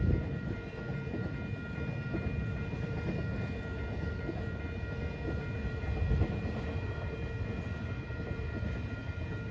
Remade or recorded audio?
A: recorded